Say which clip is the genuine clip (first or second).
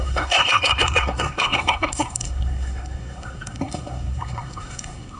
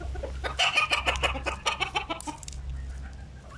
second